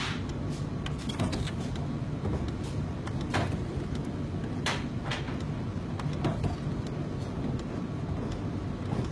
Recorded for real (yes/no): yes